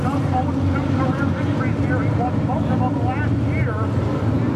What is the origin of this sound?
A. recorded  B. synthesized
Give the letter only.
A